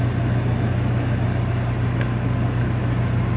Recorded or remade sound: recorded